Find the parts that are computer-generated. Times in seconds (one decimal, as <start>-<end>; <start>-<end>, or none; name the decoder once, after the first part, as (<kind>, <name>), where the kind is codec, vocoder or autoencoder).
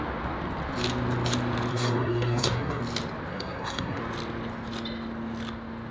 1.7-2.8 (codec, SNAC); 3.3-4.0